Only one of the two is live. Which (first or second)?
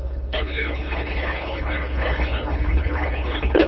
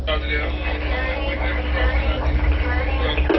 second